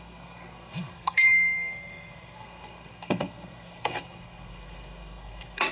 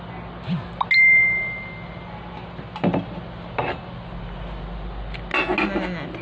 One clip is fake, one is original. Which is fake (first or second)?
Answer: first